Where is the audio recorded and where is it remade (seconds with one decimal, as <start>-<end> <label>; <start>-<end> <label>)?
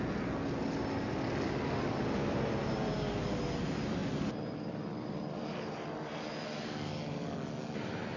0.0-8.2 recorded